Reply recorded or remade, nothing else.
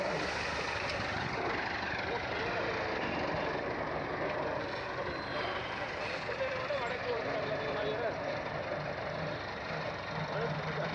recorded